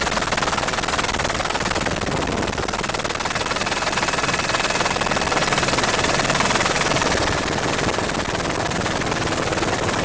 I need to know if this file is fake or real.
real